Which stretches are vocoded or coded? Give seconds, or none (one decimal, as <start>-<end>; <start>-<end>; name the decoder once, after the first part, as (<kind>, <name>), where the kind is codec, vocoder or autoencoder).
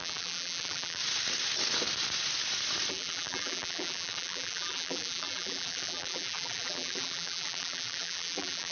0.0-1.0 (vocoder, BigVGAN v2); 2.9-8.7